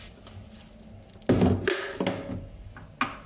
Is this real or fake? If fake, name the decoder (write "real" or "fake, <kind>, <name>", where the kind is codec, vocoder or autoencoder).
real